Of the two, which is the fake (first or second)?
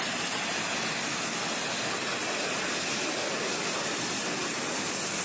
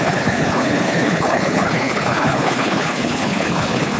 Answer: second